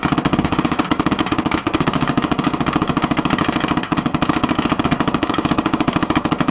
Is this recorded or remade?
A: remade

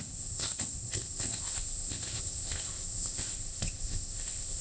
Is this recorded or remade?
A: remade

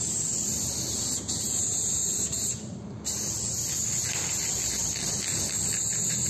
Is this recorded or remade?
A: recorded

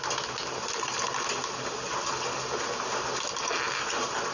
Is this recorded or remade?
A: recorded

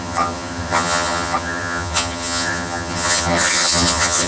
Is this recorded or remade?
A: remade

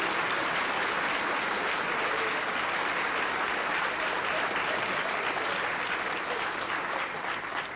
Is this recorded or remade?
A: recorded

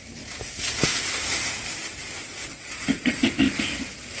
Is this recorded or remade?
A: recorded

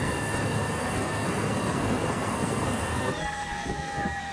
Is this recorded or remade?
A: remade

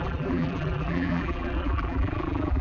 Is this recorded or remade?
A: remade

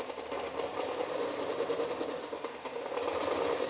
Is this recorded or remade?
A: recorded